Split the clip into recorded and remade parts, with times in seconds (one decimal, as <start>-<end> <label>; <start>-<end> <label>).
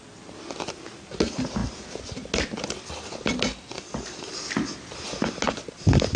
0.0-6.2 recorded